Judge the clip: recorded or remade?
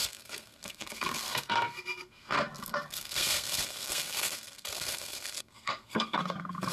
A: remade